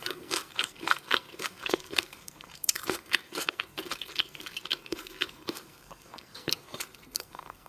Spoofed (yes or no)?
yes